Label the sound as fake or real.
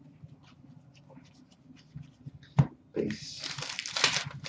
real